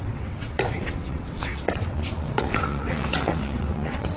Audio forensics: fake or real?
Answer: fake